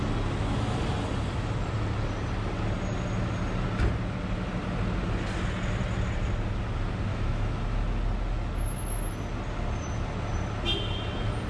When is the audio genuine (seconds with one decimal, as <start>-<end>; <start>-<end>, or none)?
0.0-7.1; 7.6-11.5